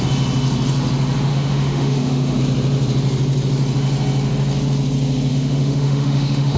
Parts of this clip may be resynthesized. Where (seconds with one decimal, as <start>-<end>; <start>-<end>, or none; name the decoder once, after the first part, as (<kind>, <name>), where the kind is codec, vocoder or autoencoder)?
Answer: 1.3-2.4 (autoencoder, DAC-VAE); 5.3-6.6